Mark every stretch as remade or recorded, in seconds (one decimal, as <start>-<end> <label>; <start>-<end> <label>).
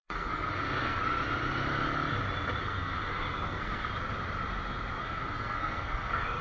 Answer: 0.0-1.0 remade; 1.0-2.6 recorded; 2.6-3.9 remade; 3.9-5.0 recorded; 5.0-6.4 remade